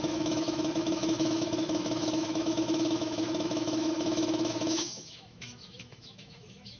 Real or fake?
fake